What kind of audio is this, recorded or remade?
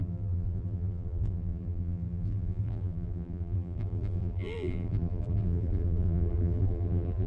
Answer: remade